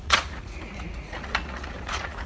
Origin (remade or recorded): remade